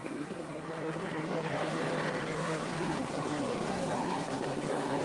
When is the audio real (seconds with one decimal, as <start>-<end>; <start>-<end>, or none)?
1.8-2.2